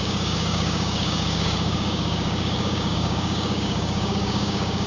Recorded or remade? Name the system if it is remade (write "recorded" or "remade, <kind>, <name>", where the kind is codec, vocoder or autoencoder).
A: remade, codec, DAC